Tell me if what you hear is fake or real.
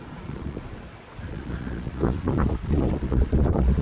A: fake